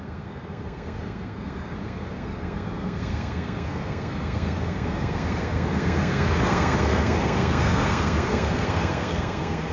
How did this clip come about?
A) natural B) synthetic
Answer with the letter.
B